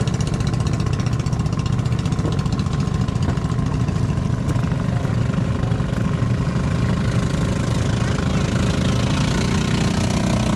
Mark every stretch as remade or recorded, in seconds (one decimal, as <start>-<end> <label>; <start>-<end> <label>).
0.0-10.6 recorded